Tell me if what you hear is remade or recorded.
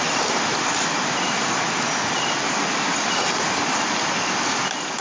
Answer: recorded